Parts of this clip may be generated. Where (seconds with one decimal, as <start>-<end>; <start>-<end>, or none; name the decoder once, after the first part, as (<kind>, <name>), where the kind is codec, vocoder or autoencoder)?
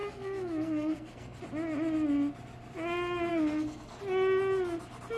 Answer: 0.0-1.4 (codec, SNAC); 3.3-4.0